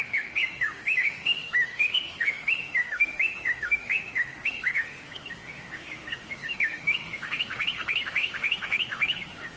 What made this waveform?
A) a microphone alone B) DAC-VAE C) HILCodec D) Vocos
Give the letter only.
B